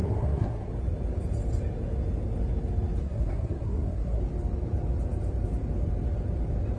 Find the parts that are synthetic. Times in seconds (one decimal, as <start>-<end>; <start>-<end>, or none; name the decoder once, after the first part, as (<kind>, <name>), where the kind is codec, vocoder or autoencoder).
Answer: 0.0-0.7 (codec, SNAC); 3.0-4.2